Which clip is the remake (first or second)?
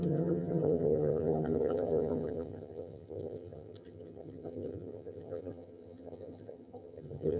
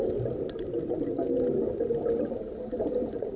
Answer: first